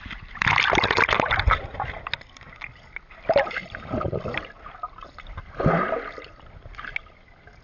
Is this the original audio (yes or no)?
yes